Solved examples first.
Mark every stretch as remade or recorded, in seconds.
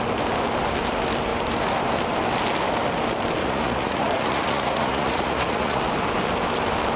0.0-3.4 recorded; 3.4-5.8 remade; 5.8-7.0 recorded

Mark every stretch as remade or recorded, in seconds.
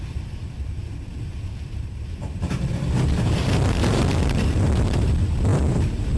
0.0-6.2 remade